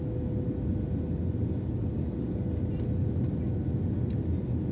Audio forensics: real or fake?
real